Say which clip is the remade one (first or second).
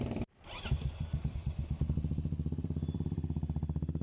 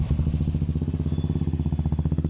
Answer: first